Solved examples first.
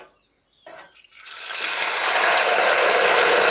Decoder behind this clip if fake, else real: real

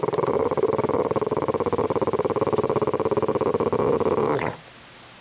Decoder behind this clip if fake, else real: real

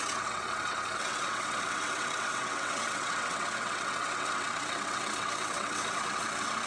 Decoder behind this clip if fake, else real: fake, vocoder, WaveNeXt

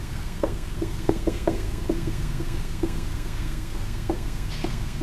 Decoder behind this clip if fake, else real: fake, codec, SNAC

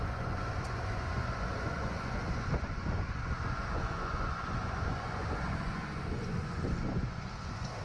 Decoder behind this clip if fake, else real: fake, vocoder, Vocos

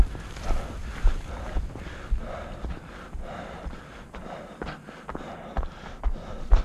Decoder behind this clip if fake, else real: real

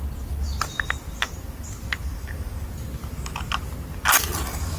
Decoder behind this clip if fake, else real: real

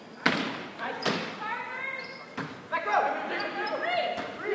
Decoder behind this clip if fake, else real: real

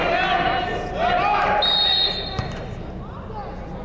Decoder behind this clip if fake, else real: real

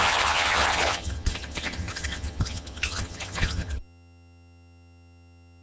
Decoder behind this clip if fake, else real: fake, vocoder, HiFi-GAN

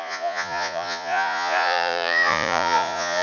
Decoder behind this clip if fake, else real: fake, vocoder, Vocos